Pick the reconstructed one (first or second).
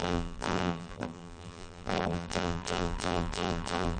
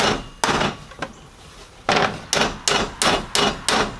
first